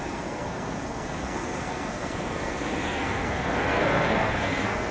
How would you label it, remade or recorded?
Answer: remade